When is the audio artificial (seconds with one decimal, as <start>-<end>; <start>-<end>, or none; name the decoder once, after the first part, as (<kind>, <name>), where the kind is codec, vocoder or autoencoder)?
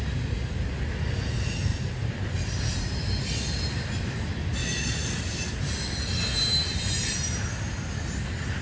1.7-2.9 (vocoder, BigVGAN v2); 4.6-5.9